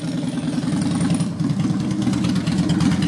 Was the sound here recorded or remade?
recorded